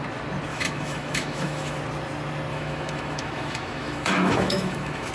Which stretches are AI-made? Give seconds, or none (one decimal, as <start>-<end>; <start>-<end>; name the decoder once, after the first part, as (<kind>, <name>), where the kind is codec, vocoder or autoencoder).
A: 0.5-1.8 (autoencoder, DAC-VAE); 2.5-5.1